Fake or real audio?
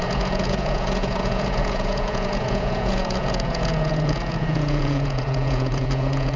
fake